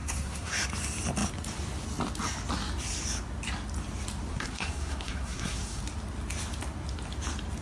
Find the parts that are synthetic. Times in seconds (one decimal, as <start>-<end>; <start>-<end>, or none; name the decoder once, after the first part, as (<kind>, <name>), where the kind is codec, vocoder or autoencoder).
0.0-0.5 (codec, SNAC); 4.3-5.8